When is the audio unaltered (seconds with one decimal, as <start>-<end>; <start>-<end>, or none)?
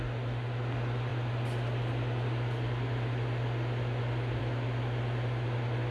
0.0-5.9